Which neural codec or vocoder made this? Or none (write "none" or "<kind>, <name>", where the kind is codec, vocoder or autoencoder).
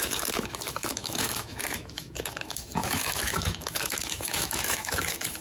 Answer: autoencoder, DAC-VAE